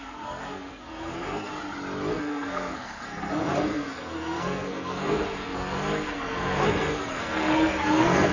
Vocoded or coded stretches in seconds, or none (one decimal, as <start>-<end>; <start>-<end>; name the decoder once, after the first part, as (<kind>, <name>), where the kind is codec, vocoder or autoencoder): 0.0-1.5 (codec, SNAC); 2.1-8.3